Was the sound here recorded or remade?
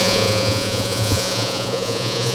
remade